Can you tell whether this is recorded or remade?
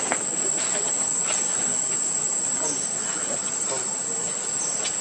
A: recorded